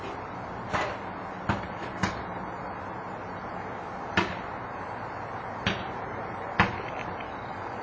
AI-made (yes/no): no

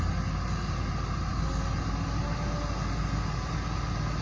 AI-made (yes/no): no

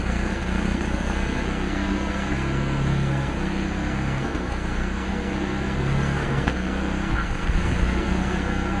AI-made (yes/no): yes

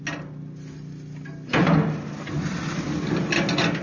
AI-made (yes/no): no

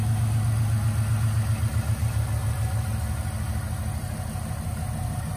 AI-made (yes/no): no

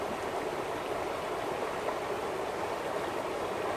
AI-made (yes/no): no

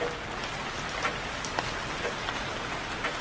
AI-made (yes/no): no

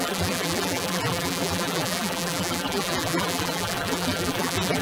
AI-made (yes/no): yes